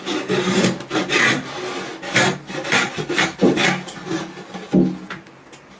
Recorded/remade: recorded